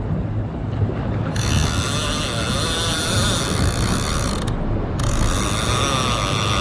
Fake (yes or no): no